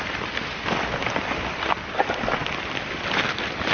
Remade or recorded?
remade